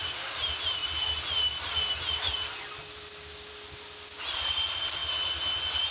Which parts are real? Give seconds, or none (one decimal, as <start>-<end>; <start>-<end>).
0.8-4.3; 5.0-5.9